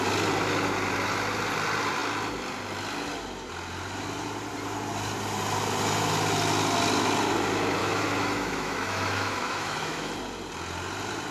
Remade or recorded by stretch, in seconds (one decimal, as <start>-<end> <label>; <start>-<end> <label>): 0.0-7.8 recorded; 7.8-10.1 remade; 10.1-11.3 recorded